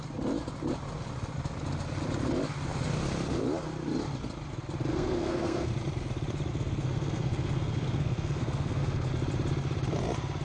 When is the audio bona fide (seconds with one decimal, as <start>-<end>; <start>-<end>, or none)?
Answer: 0.0-4.9; 5.7-6.5; 9.1-10.4